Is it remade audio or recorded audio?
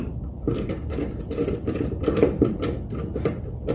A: recorded